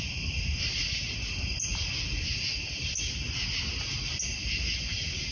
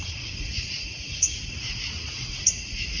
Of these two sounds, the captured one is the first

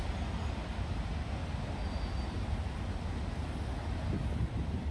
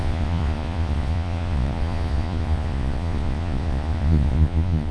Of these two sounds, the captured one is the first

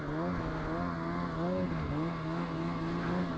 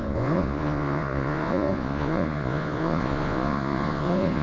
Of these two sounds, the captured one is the first